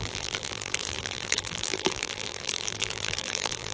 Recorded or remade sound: remade